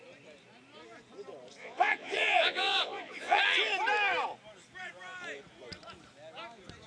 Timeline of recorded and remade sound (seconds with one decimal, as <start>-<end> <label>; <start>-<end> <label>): 0.0-1.6 recorded; 1.6-3.4 remade; 3.4-6.9 recorded